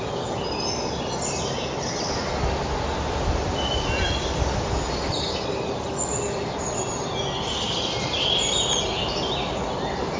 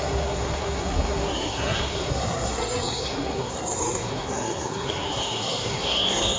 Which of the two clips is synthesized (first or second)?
second